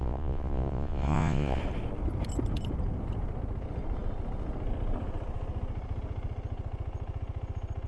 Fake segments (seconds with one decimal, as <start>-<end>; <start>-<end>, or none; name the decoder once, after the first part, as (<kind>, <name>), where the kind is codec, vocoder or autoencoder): 0.0-1.6 (vocoder, Vocos)